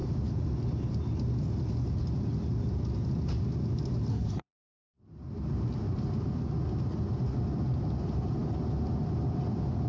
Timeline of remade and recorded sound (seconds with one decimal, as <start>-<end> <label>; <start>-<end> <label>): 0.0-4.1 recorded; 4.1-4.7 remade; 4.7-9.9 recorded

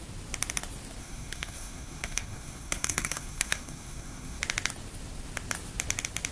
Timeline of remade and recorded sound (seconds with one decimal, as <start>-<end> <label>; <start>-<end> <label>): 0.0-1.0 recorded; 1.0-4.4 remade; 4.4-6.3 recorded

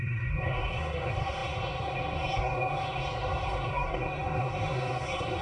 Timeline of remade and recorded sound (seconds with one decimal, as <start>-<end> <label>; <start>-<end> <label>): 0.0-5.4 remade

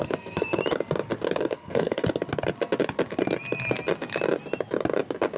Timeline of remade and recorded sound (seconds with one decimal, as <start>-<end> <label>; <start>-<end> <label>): 0.0-0.6 remade; 0.6-1.4 recorded; 1.4-2.0 remade; 2.0-5.4 recorded